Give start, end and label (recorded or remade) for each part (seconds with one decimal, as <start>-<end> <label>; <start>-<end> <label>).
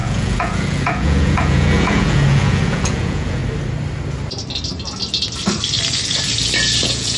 0.0-3.4 remade; 3.4-6.8 recorded; 6.8-7.2 remade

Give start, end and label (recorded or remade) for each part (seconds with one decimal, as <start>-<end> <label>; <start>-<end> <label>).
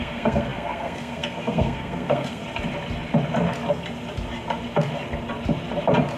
0.0-2.4 remade; 2.4-6.2 recorded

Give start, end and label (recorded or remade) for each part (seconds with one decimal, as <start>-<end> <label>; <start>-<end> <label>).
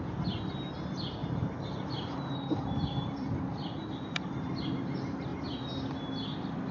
0.0-1.2 recorded; 1.2-4.5 remade; 4.5-6.7 recorded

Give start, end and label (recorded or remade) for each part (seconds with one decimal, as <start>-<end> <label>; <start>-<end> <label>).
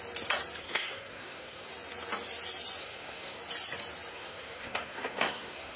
0.0-0.6 recorded; 0.6-1.7 remade; 1.7-2.8 recorded; 2.8-3.4 remade; 3.4-4.1 recorded; 4.1-5.8 remade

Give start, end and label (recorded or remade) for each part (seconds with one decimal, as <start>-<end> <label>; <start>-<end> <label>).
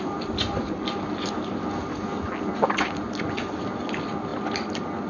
0.0-5.1 recorded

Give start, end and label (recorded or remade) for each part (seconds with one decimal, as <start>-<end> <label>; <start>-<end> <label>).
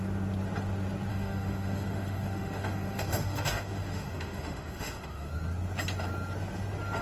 0.0-1.1 recorded; 1.1-5.3 remade; 5.3-7.0 recorded